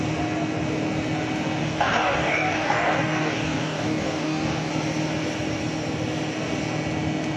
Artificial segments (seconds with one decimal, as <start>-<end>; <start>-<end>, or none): 1.6-4.7